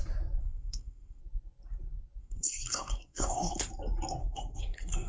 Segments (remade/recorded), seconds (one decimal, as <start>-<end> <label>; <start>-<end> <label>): 0.0-0.4 recorded; 0.4-1.2 remade; 1.2-2.2 recorded; 2.2-3.7 remade; 3.7-4.2 recorded; 4.2-5.1 remade